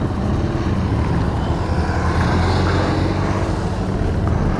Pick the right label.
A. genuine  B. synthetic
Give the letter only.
A